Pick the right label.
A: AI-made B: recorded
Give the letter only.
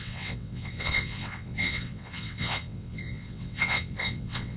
A